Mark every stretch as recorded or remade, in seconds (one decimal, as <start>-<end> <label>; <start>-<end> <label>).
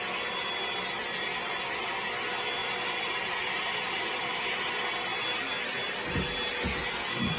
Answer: 0.0-2.6 recorded; 2.6-4.7 remade; 4.7-7.4 recorded